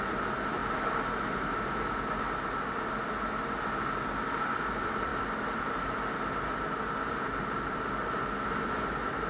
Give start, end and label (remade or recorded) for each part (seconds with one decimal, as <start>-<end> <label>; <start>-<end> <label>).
0.0-9.3 recorded